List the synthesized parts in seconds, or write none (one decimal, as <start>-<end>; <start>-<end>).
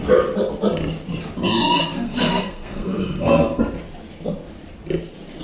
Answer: 1.8-3.6